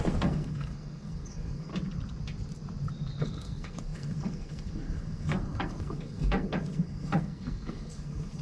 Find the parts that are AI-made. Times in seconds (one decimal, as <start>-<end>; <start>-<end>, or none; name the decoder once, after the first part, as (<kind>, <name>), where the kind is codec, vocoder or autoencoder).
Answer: 0.0-1.7 (codec, SNAC); 3.2-8.4